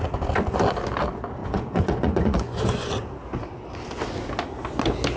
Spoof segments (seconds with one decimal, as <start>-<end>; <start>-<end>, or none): 1.4-2.9